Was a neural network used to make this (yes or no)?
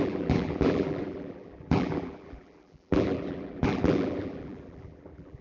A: yes